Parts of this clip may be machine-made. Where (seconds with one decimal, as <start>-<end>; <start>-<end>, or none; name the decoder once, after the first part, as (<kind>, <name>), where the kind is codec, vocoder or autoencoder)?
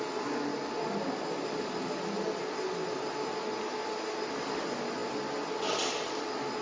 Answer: none